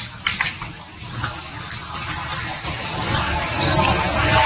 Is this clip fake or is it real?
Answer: real